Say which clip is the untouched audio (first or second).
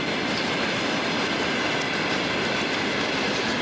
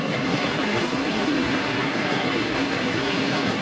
first